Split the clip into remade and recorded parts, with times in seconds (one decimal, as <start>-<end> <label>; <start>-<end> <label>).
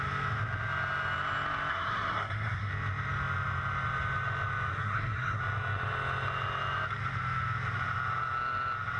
0.0-1.7 recorded; 1.7-2.7 remade; 2.7-4.7 recorded; 4.7-5.4 remade; 5.4-9.0 recorded